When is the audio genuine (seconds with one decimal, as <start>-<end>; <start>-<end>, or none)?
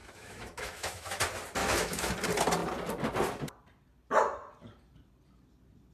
1.2-1.6; 2.1-5.9